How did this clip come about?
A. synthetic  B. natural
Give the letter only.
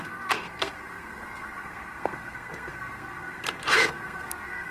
A